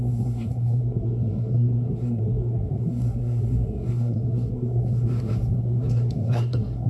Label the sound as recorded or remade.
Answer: remade